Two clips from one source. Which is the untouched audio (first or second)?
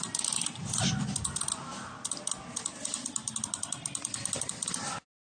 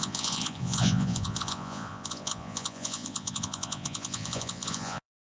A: first